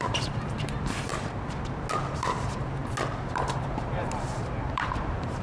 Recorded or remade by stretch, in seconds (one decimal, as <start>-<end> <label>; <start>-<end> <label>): 0.0-1.1 remade; 1.1-2.1 recorded; 2.1-2.8 remade; 2.8-3.3 recorded; 3.3-5.4 remade